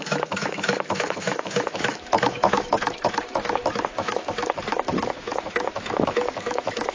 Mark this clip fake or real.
fake